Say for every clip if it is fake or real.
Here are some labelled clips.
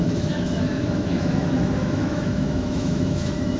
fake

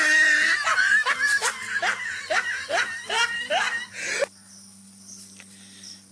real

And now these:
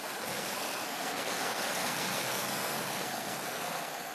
fake